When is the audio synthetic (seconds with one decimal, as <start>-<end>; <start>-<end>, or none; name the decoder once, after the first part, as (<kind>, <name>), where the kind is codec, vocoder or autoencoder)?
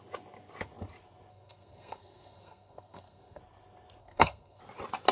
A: 1.3-3.4 (codec, SNAC); 4.0-4.6